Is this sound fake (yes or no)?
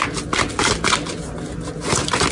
no